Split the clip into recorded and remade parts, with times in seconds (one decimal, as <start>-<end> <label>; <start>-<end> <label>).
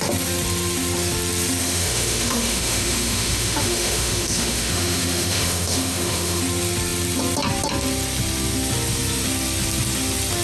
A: 0.0-1.6 recorded; 1.6-6.4 remade; 6.4-10.4 recorded